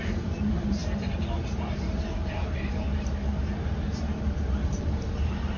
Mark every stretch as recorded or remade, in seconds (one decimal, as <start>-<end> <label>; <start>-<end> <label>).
0.0-5.6 remade